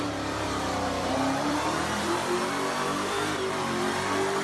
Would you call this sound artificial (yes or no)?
yes